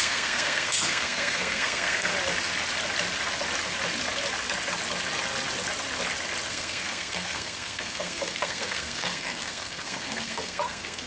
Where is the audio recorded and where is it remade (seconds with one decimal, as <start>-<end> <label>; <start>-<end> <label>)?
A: 0.0-2.1 remade; 2.1-6.5 recorded; 6.5-11.1 remade